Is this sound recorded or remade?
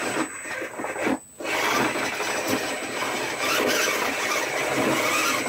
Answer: recorded